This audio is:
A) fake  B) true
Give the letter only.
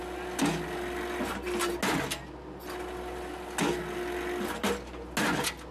B